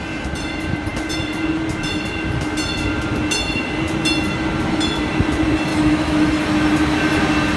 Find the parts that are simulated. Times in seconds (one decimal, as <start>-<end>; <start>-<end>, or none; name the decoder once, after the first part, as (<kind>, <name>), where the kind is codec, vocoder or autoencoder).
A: 5.7-6.3 (autoencoder, DAC-VAE)